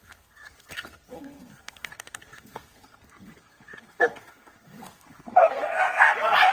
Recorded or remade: remade